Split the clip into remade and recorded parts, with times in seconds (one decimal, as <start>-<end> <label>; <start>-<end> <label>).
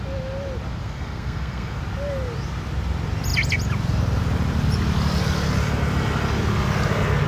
0.0-0.8 recorded; 0.8-1.8 remade; 1.8-7.3 recorded